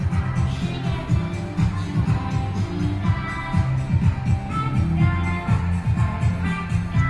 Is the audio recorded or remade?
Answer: recorded